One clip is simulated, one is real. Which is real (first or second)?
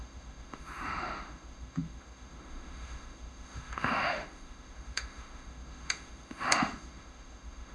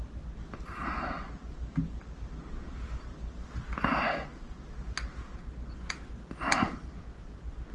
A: second